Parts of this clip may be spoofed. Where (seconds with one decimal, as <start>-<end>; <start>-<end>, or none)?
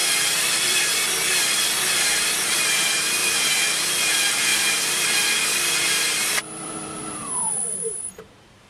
3.2-4.1; 4.5-8.7